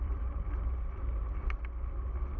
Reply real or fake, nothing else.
real